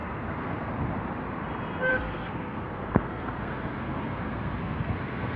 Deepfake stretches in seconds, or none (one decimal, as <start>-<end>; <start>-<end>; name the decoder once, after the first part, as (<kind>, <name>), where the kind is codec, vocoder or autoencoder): 0.0-0.7 (codec, SNAC); 1.9-5.4